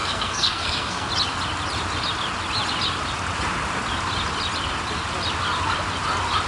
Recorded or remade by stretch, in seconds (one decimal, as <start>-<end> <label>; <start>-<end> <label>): 0.0-1.1 remade; 1.1-6.5 recorded